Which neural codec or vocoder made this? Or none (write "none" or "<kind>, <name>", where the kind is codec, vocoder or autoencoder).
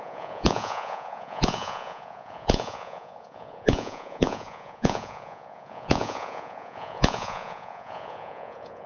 vocoder, Vocos